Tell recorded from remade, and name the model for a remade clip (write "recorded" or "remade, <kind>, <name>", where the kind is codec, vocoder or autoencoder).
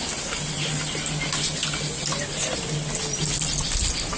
recorded